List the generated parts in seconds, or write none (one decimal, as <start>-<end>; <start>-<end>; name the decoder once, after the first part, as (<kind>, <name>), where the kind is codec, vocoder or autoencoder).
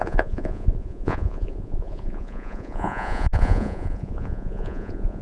0.0-5.2 (vocoder, Vocos)